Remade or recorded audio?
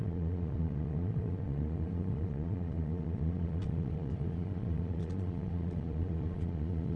remade